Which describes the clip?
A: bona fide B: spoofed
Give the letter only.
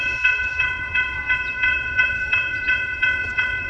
B